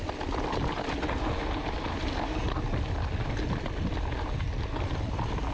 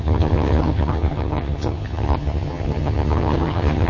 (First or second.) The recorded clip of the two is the first